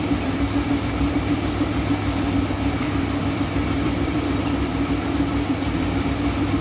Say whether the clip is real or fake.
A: fake